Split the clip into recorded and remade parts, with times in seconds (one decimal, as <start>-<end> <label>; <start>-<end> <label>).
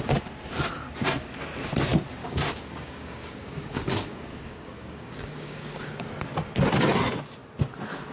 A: 0.0-2.2 recorded; 2.2-5.9 remade; 5.9-8.1 recorded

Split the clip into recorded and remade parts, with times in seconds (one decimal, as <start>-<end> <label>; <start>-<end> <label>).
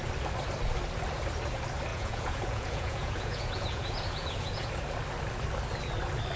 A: 0.0-1.9 recorded; 1.9-4.7 remade; 4.7-6.4 recorded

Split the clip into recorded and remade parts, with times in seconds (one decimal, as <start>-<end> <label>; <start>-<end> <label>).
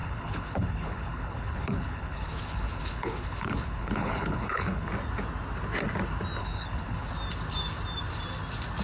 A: 0.0-4.9 remade; 4.9-6.4 recorded; 6.4-7.1 remade; 7.1-8.8 recorded